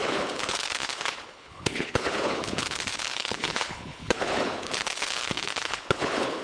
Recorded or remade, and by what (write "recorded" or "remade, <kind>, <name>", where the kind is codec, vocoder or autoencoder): remade, codec, HILCodec